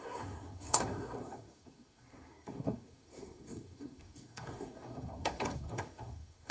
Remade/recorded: remade